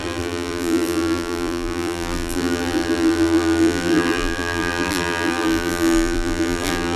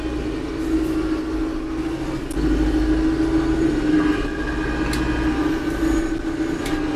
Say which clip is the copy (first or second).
first